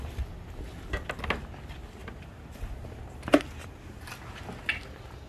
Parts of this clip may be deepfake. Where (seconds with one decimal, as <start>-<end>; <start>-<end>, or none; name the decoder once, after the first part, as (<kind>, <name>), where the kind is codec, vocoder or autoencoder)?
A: 2.0-4.1 (vocoder, BigVGAN v2)